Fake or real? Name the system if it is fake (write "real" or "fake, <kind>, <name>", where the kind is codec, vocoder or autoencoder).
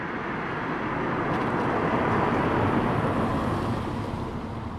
real